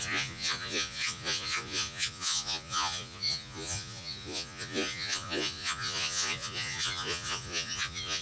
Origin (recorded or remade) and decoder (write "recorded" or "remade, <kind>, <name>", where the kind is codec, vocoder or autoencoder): remade, vocoder, Vocos